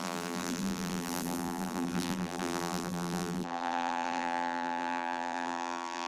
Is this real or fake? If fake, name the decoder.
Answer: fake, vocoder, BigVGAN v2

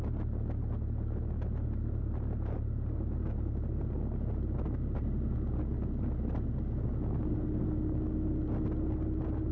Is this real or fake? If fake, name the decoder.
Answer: real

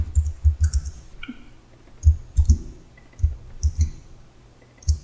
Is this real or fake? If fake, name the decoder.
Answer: real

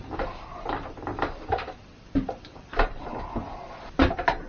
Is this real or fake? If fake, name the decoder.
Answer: fake, vocoder, BigVGAN v2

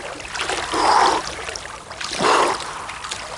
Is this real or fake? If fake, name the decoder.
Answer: fake, vocoder, BigVGAN v2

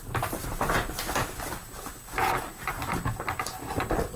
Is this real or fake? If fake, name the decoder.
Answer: real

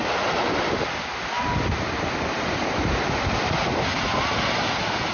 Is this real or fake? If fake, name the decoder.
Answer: real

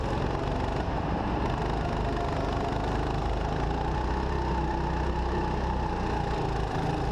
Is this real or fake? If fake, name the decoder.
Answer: real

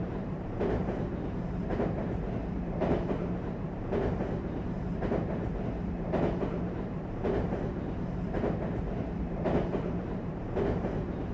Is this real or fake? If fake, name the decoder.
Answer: fake, vocoder, BigVGAN v2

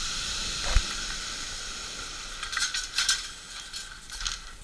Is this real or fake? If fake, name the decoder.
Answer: fake, vocoder, BigVGAN v2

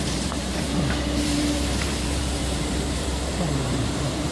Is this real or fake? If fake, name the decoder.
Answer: fake, vocoder, BigVGAN v2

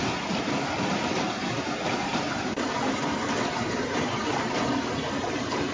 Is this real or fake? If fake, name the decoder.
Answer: fake, vocoder, BigVGAN v2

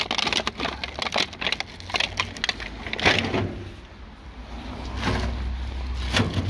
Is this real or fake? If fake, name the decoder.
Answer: real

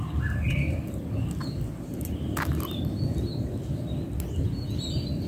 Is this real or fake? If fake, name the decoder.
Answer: real